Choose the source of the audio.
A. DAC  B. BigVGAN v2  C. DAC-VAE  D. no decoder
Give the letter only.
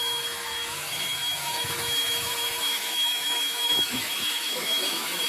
C